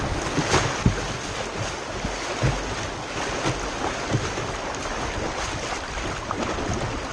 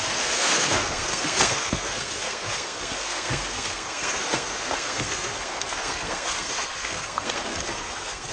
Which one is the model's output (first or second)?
second